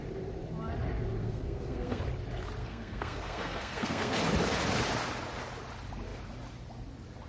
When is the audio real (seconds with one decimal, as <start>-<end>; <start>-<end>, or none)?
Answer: 0.0-1.2; 2.0-2.6; 4.2-7.3